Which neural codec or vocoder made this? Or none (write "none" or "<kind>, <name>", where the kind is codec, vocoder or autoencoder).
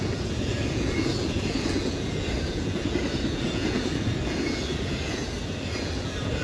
vocoder, Vocos